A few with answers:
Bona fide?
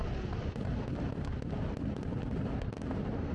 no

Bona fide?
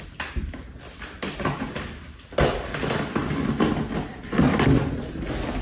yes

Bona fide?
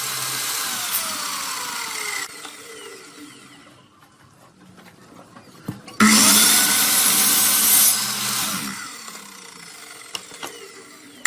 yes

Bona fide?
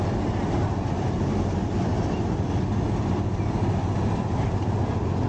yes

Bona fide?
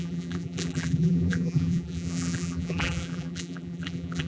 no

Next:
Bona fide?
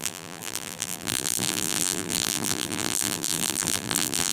no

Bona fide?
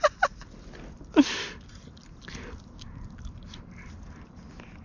yes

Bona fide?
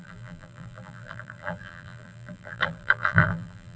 no